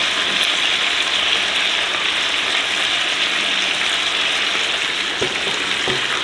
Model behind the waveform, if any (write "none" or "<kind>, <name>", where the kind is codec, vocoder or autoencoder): none